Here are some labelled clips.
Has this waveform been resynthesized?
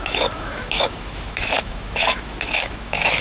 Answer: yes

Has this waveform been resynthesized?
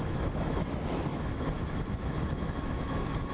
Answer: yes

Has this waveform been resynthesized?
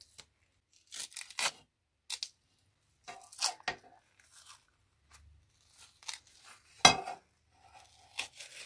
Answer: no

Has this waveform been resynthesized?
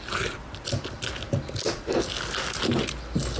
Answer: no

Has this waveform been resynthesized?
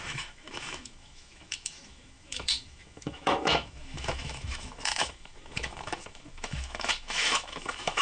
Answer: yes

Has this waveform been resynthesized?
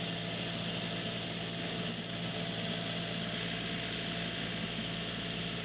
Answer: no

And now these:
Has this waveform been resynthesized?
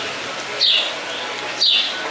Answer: no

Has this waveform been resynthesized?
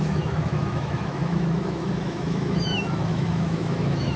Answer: yes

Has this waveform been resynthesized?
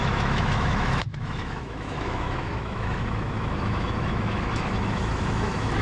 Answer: yes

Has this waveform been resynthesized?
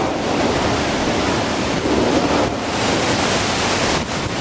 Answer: no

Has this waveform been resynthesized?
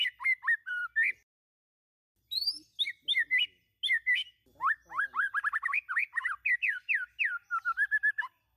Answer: no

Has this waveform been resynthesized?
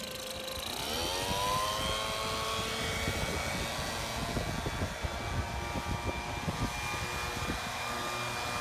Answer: no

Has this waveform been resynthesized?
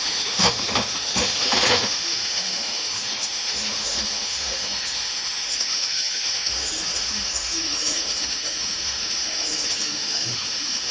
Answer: yes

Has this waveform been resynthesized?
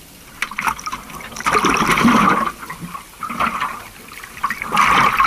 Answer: no